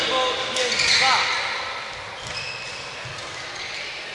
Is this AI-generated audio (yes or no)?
no